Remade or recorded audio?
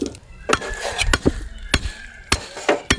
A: recorded